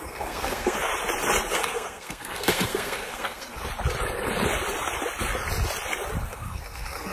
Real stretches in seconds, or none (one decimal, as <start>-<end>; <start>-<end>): 0.9-1.5; 3.6-6.2